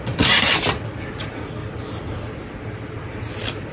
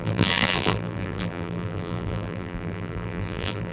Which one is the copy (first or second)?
second